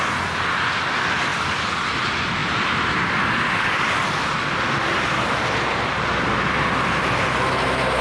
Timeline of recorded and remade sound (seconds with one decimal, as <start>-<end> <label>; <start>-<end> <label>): 0.0-8.0 recorded